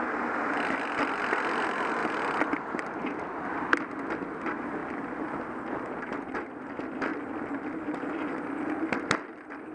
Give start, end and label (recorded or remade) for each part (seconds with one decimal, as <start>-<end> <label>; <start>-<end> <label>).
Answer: 0.0-4.8 recorded; 4.8-5.7 remade; 5.7-9.7 recorded